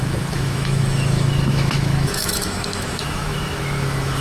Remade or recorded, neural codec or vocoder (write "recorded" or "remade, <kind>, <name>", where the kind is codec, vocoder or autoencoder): remade, autoencoder, DAC-VAE